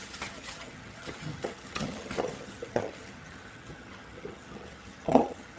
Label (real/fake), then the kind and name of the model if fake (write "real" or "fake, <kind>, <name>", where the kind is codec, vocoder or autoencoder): fake, vocoder, HiFi-GAN